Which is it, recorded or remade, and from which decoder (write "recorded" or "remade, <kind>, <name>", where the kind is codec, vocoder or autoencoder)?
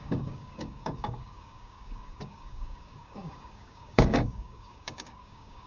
remade, codec, DAC